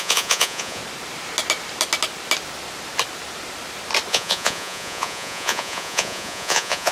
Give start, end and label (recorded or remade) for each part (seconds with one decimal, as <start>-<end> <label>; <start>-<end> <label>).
0.0-0.8 remade; 0.8-4.1 recorded; 4.1-6.9 remade